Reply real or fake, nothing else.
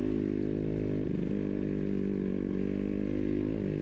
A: real